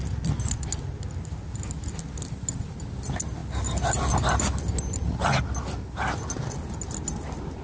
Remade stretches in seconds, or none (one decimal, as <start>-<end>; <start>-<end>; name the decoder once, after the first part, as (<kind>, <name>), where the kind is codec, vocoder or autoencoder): none

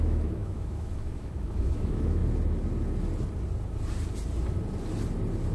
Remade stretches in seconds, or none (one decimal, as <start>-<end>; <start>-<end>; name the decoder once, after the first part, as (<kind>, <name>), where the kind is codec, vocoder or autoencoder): 0.0-2.2 (autoencoder, DAC-VAE)

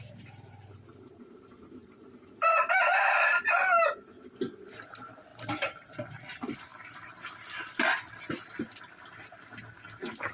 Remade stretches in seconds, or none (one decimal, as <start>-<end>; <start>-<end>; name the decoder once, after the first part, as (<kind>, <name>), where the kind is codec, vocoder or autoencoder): 0.0-10.3 (vocoder, BigVGAN v2)

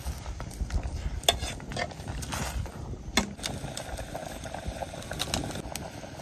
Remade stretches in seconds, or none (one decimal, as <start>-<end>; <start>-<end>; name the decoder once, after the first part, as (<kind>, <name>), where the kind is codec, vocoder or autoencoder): 4.2-4.9 (vocoder, BigVGAN v2)

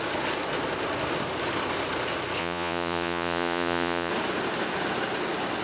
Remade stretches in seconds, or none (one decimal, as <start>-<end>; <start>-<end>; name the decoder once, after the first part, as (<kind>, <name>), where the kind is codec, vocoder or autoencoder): 2.4-4.1 (vocoder, Vocos)

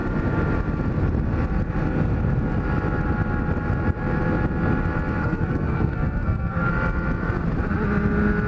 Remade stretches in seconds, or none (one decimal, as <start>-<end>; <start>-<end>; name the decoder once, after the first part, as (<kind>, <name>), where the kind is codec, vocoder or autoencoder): 5.2-6.7 (codec, SNAC)

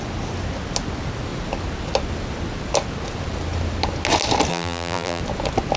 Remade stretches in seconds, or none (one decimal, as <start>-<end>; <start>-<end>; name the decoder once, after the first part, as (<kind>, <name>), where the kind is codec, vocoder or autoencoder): 4.5-5.2 (vocoder, BigVGAN v2)